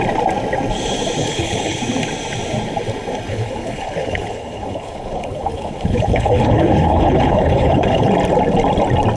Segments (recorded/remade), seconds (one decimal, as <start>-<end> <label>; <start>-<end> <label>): 0.0-1.2 recorded; 1.2-1.8 remade; 1.8-3.3 recorded; 3.3-8.1 remade; 8.1-9.2 recorded